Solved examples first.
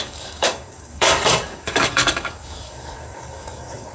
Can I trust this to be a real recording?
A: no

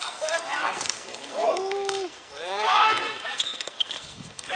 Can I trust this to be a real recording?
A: no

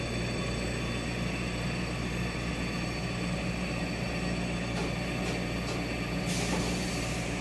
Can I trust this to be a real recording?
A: yes